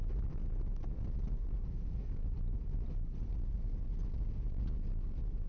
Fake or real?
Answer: real